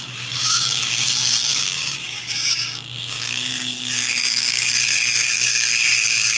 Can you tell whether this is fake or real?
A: fake